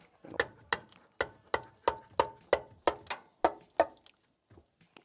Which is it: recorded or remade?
recorded